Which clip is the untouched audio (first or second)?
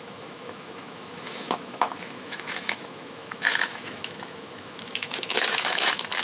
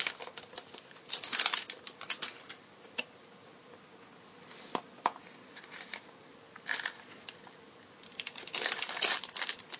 second